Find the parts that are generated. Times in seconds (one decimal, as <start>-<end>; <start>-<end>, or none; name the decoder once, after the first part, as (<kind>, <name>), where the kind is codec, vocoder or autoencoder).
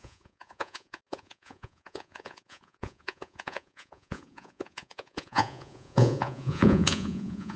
0.0-7.6 (vocoder, Vocos)